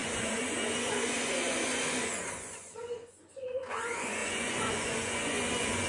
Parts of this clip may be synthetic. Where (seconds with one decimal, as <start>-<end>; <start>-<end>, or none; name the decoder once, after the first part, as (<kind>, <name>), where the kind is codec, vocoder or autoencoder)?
0.0-5.9 (vocoder, Vocos)